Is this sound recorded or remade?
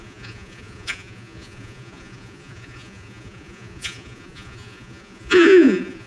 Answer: remade